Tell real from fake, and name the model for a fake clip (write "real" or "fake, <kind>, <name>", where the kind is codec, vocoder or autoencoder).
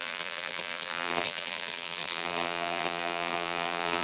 fake, vocoder, BigVGAN v2